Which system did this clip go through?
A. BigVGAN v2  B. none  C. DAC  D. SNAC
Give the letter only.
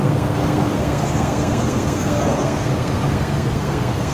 D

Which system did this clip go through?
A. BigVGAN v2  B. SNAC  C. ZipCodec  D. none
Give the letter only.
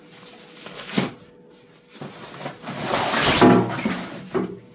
D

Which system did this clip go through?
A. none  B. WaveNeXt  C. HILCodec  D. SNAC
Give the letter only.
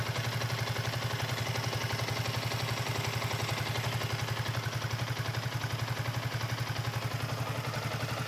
A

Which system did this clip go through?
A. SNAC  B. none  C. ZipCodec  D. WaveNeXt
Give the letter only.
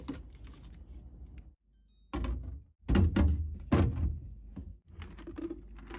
B